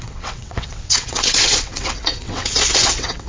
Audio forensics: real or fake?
fake